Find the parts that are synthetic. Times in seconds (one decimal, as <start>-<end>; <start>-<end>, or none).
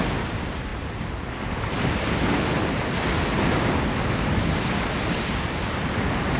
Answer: none